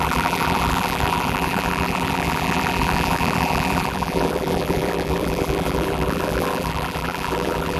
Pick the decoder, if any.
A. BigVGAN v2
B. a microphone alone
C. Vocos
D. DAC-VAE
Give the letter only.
A